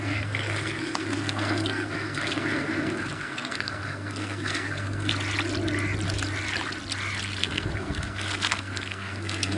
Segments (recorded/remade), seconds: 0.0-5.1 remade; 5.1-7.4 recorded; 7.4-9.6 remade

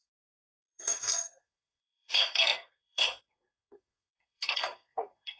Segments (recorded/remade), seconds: 0.0-5.4 remade

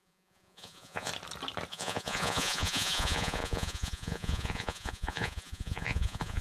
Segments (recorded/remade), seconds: 0.0-1.1 remade; 1.1-1.7 recorded; 1.7-6.4 remade

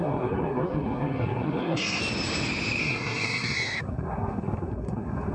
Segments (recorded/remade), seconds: 0.0-2.0 remade; 2.0-2.8 recorded; 2.8-5.3 remade

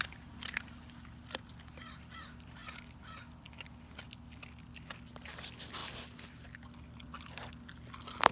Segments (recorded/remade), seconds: 0.0-8.3 recorded

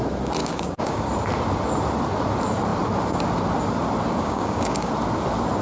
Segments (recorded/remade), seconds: 0.0-0.4 recorded; 0.4-1.1 remade; 1.1-4.2 recorded; 4.2-4.9 remade; 4.9-5.6 recorded

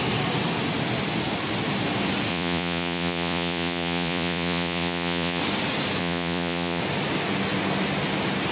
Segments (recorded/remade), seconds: 0.0-2.3 recorded; 2.3-5.4 remade; 5.4-6.0 recorded; 6.0-6.8 remade; 6.8-8.5 recorded

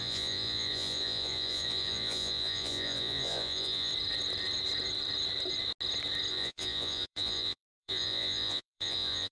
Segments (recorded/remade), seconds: 0.0-3.9 remade; 3.9-6.3 recorded; 6.3-9.3 remade